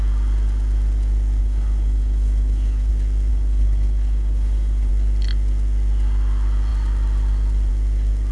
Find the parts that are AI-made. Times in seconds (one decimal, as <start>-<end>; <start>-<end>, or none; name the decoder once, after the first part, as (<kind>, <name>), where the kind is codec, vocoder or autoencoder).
1.4-2.9 (codec, HILCodec); 3.3-4.9